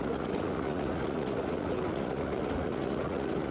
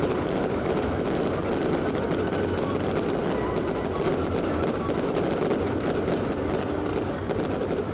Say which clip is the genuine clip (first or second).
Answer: second